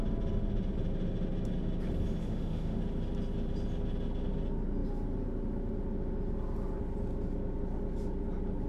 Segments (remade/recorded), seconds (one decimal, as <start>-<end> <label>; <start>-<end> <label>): 0.0-2.2 recorded; 2.2-2.8 remade; 2.8-8.7 recorded